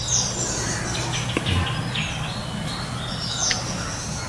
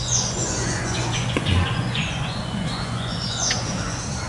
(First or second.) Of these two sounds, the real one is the first